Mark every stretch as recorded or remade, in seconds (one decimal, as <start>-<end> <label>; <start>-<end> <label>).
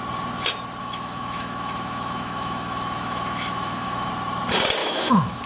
0.0-0.8 recorded; 0.8-4.1 remade; 4.1-4.8 recorded; 4.8-5.5 remade